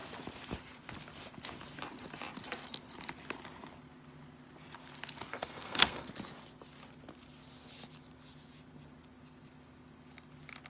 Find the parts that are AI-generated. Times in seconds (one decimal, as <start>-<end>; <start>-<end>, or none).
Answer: 5.3-6.1